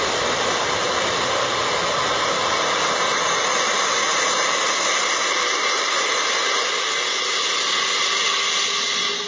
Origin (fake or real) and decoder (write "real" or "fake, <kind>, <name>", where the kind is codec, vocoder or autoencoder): real